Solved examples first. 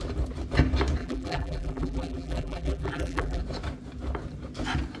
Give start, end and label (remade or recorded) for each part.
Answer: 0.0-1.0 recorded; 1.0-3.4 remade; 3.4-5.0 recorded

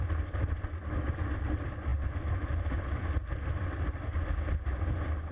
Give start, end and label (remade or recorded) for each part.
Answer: 0.0-5.3 recorded

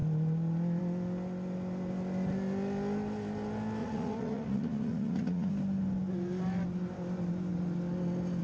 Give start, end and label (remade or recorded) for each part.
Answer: 0.0-3.8 recorded; 3.8-5.5 remade; 5.5-8.4 recorded